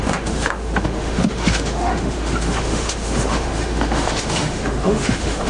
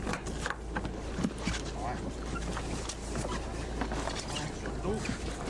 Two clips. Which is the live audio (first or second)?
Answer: second